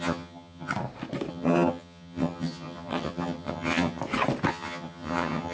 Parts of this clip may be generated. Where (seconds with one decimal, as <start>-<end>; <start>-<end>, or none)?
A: 0.0-0.7; 1.3-4.0; 4.5-5.5